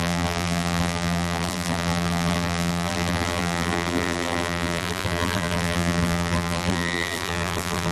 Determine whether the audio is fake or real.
fake